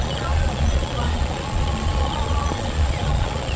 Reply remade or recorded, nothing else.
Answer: remade